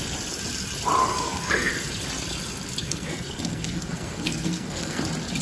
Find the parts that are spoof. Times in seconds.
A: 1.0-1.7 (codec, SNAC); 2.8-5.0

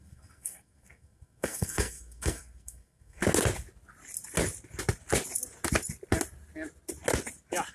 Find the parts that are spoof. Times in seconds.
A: 0.0-3.2 (codec, SNAC)

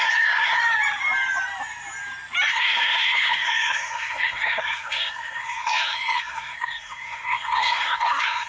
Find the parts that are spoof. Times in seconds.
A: 0.0-0.6 (codec, SNAC); 2.5-8.5

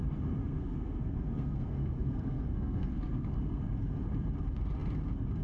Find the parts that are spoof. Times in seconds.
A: 0.4-3.6 (codec, SNAC)

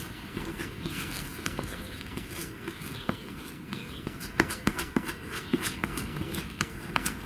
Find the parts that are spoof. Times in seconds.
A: 0.0-7.3 (codec, SNAC)

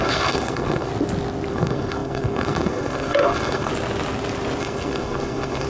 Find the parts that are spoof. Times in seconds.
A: 0.0-0.9 (codec, SNAC); 1.5-3.7; 4.6-5.7